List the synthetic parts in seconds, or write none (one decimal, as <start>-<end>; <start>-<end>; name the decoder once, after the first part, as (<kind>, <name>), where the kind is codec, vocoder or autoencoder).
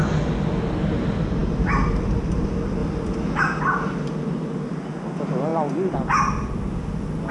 none